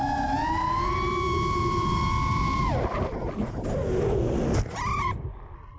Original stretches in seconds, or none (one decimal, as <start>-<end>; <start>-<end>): 0.0-5.8